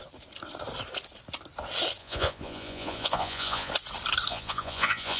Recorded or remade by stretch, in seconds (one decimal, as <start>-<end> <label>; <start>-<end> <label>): 0.0-2.0 recorded; 2.0-3.7 remade; 3.7-4.3 recorded; 4.3-5.2 remade